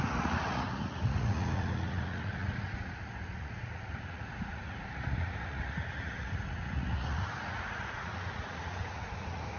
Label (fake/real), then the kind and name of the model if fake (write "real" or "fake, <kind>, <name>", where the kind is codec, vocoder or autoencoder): fake, vocoder, Vocos